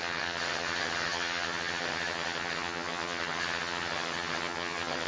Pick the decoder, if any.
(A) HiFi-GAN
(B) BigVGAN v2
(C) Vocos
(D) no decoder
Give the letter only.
A